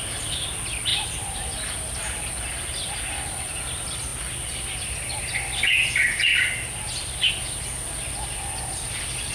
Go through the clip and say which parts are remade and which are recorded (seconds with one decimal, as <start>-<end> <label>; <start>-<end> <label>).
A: 0.0-9.3 recorded